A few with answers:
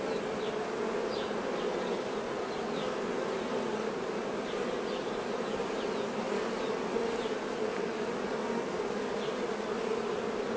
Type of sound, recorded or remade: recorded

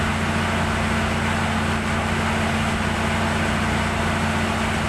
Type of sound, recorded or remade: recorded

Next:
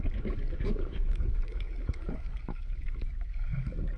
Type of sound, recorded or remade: remade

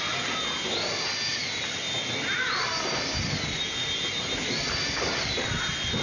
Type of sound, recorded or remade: recorded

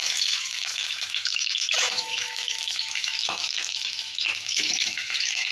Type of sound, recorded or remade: remade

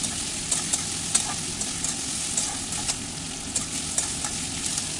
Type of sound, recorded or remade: recorded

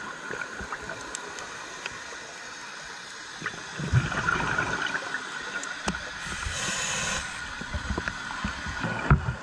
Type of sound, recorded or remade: recorded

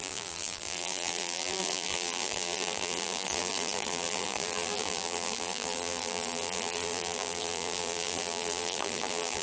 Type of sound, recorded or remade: remade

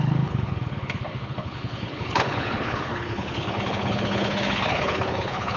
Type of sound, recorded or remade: remade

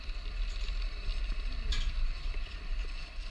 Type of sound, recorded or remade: recorded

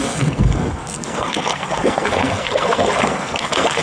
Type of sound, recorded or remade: remade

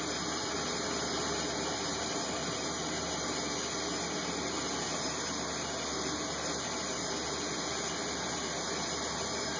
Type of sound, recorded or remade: recorded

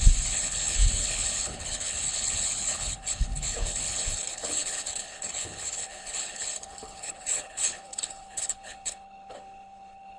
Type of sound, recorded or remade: remade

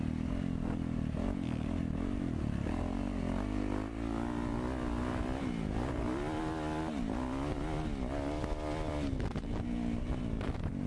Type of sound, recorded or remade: recorded